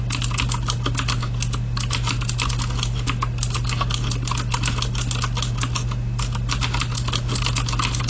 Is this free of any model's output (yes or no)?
yes